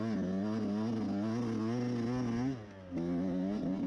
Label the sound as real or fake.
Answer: real